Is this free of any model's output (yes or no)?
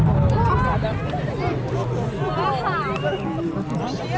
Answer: yes